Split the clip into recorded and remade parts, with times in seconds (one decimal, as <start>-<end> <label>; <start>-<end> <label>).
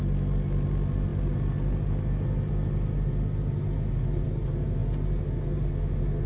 0.0-6.3 recorded